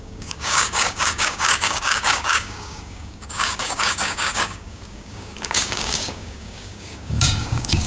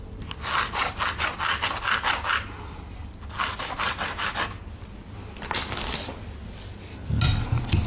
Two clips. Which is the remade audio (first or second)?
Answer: first